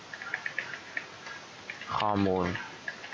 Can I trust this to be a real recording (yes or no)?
yes